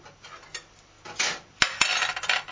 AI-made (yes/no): no